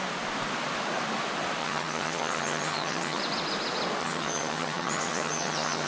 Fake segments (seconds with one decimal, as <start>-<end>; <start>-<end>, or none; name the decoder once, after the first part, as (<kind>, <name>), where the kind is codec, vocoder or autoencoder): 1.6-3.2 (vocoder, HiFi-GAN); 4.0-5.9